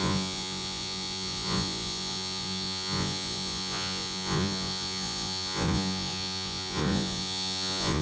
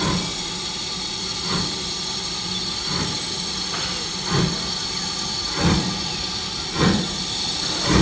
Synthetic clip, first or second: first